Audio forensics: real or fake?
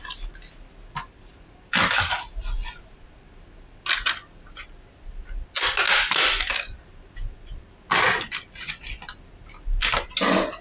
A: real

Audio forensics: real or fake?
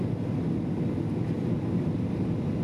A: real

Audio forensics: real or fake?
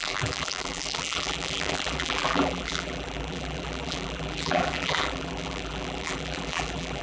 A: fake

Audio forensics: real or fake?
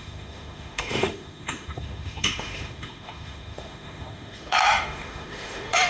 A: fake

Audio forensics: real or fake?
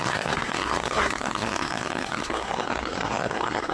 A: fake